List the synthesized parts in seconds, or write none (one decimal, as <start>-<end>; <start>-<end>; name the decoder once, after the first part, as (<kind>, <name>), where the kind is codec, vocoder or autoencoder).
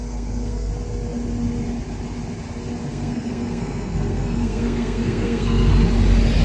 0.0-0.7 (codec, SNAC); 2.9-5.7